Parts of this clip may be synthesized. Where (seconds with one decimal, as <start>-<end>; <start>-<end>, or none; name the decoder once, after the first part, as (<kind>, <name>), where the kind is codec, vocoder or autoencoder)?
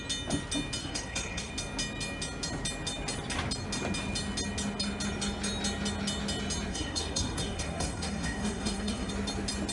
0.8-1.5 (codec, SNAC); 6.7-9.1